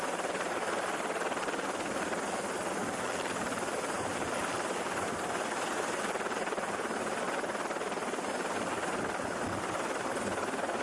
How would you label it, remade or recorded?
recorded